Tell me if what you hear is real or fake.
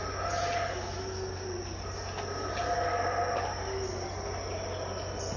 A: real